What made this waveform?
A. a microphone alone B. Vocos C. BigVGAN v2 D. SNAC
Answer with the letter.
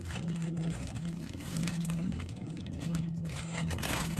D